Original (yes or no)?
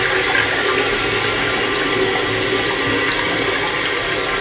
yes